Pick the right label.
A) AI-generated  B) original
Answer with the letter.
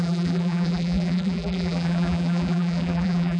A